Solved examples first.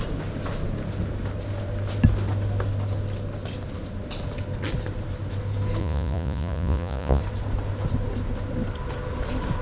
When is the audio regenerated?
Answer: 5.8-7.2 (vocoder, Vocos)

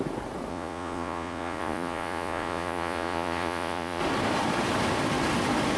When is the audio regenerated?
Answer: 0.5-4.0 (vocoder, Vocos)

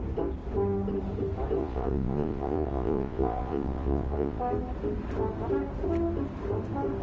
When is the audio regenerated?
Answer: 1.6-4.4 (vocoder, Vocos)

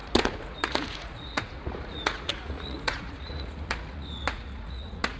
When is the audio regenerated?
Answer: 0.0-5.2 (vocoder, Vocos)

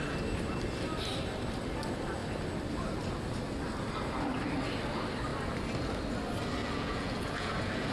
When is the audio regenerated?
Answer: 6.6-7.9 (vocoder, Vocos)